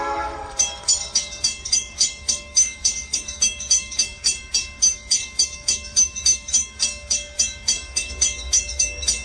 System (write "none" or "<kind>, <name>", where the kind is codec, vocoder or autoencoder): codec, DAC